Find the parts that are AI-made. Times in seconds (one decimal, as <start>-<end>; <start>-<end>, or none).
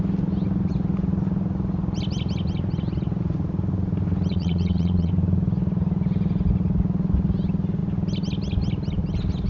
4.3-5.1